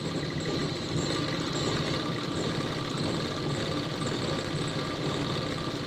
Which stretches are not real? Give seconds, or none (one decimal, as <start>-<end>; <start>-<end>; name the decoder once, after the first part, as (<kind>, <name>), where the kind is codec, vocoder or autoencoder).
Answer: 0.0-5.9 (vocoder, BigVGAN v2)